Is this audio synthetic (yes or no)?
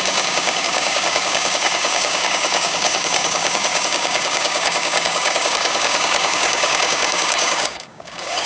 yes